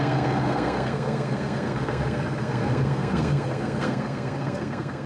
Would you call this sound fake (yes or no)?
yes